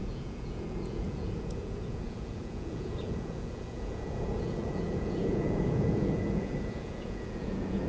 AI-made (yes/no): yes